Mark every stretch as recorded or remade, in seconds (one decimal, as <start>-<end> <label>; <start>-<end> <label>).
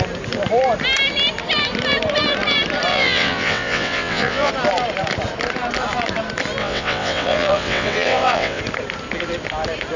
0.0-2.9 recorded; 2.9-4.5 remade; 4.5-6.6 recorded; 6.6-8.6 remade; 8.6-10.0 recorded